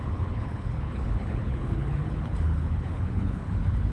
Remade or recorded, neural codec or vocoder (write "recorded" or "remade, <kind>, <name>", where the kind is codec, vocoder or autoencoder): remade, codec, HILCodec